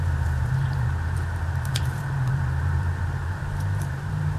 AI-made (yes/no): yes